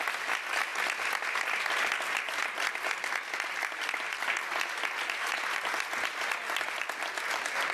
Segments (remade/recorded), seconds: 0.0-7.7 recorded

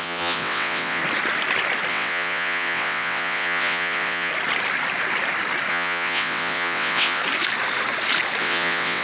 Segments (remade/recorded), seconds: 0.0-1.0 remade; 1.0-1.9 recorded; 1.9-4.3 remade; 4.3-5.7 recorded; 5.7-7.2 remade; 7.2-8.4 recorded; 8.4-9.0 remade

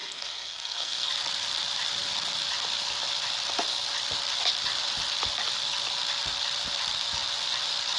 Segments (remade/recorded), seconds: 0.0-1.1 remade; 1.1-8.0 recorded